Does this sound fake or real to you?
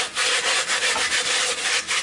real